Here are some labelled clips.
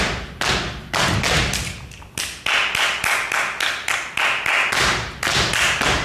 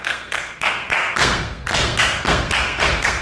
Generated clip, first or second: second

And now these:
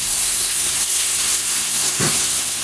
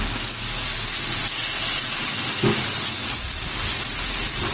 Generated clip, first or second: first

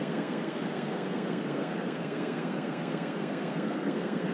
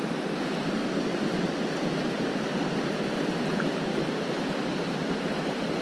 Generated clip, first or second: first